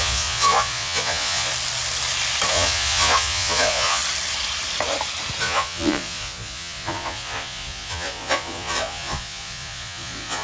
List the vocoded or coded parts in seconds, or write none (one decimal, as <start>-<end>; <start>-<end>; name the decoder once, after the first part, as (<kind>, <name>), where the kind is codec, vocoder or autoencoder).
0.0-1.5 (vocoder, Vocos); 2.5-4.0; 5.4-10.4